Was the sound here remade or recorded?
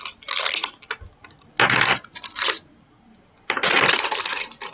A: recorded